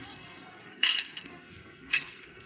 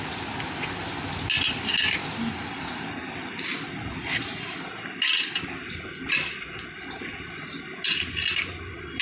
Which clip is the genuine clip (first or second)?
second